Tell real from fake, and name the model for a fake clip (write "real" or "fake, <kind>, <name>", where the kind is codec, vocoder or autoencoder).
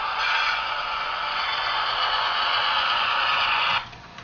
fake, vocoder, Vocos